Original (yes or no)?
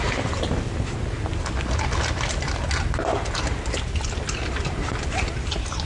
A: yes